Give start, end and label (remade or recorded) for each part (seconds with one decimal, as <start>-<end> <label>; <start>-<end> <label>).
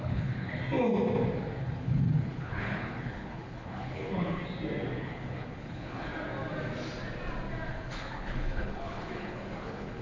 0.0-0.6 remade; 0.6-1.6 recorded; 1.6-4.4 remade; 4.4-5.0 recorded; 5.0-6.1 remade; 6.1-7.7 recorded; 7.7-10.0 remade